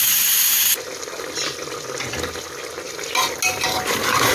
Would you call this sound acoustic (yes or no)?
yes